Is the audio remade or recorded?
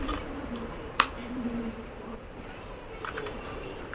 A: remade